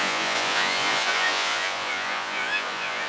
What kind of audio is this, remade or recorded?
remade